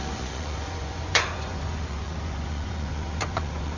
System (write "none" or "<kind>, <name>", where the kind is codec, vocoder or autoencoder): vocoder, Vocos